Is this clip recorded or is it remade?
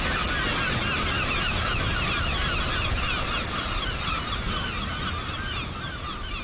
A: recorded